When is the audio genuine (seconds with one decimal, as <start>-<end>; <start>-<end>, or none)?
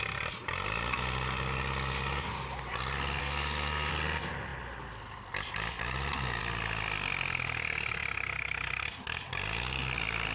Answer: 0.0-3.2; 3.9-10.3